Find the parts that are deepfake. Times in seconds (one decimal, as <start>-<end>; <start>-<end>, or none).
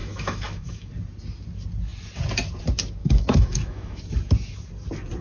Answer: 0.0-0.9; 3.0-4.0